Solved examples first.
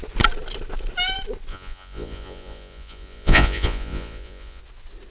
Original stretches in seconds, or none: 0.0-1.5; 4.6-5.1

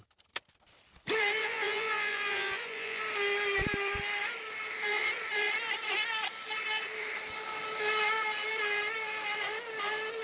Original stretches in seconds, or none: 0.0-1.4; 3.0-10.2

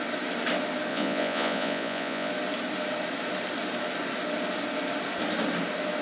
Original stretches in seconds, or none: 0.0-0.9; 2.3-6.0

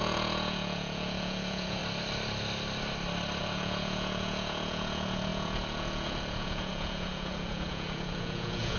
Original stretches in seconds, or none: 1.8-3.4

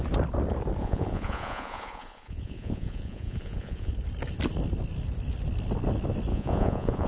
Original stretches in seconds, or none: 0.0-0.8; 3.9-6.3

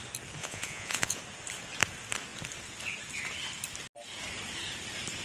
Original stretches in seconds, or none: 0.0-0.4; 1.2-5.2

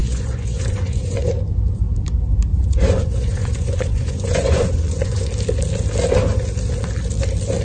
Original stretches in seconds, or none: 1.3-2.5; 5.3-7.6